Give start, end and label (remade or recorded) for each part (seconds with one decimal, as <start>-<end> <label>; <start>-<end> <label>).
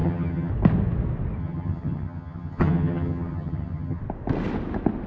0.0-0.5 remade; 0.5-1.4 recorded; 1.4-4.0 remade; 4.0-5.1 recorded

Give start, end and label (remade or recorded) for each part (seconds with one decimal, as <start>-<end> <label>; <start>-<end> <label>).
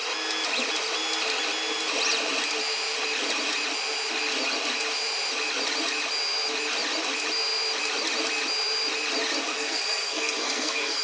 0.0-9.5 recorded; 9.5-11.0 remade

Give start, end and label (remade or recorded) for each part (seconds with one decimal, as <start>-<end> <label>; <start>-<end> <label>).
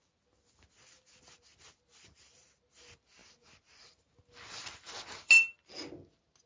0.0-6.5 recorded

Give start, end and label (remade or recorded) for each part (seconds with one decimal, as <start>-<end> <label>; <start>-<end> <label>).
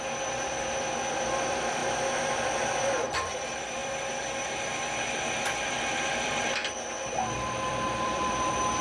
0.0-1.8 remade; 1.8-2.3 recorded; 2.3-6.6 remade; 6.6-7.3 recorded; 7.3-8.8 remade